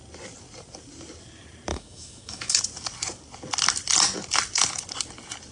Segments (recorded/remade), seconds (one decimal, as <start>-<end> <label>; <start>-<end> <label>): 0.0-1.7 recorded; 1.7-2.6 remade; 2.6-5.5 recorded